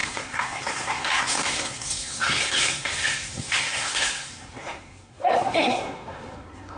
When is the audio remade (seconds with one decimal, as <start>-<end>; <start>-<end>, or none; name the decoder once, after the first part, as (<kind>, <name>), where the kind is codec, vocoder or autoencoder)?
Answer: 0.0-6.8 (codec, SNAC)

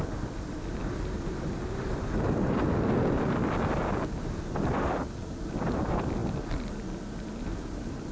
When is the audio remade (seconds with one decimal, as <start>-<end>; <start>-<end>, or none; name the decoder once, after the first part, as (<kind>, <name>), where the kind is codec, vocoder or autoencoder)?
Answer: none

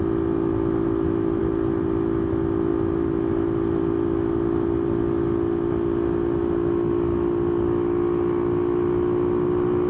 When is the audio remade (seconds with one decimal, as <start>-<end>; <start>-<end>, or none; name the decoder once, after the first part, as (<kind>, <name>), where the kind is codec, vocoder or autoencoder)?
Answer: none

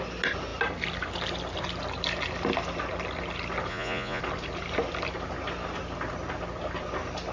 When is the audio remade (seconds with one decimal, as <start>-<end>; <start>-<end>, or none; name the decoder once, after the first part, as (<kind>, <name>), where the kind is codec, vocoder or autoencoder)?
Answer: 3.7-4.2 (vocoder, Vocos)

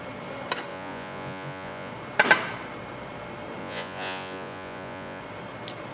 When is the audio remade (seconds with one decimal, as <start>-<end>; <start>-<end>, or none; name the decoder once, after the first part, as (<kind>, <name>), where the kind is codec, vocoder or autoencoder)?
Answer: 0.7-1.9 (vocoder, Vocos); 3.6-5.2

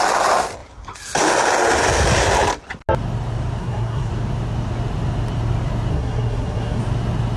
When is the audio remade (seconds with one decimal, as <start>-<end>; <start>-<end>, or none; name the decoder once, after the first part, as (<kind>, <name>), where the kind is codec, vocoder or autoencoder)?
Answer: 3.6-4.1 (codec, SNAC); 5.9-6.8

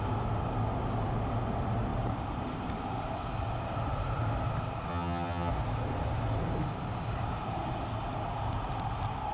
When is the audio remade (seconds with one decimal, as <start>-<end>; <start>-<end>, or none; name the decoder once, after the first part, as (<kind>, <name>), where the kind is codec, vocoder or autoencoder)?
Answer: 4.9-5.5 (vocoder, HiFi-GAN)

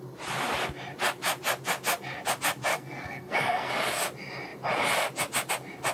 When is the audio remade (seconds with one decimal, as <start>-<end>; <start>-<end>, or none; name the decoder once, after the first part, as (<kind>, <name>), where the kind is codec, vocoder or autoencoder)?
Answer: 2.7-3.7 (codec, SNAC)